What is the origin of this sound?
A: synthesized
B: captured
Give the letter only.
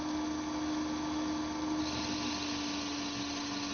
B